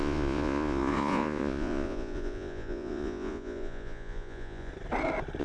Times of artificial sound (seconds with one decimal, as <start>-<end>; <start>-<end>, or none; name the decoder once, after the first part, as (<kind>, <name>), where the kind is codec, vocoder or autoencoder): 0.0-4.7 (vocoder, Vocos)